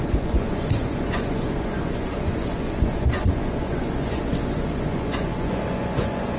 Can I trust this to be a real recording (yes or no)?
no